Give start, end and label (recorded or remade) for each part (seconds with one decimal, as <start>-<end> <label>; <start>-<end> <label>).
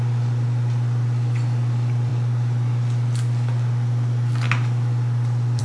0.0-2.1 remade; 2.1-5.6 recorded